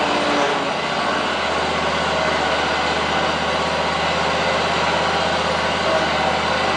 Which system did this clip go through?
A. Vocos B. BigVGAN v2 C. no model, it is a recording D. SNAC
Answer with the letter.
C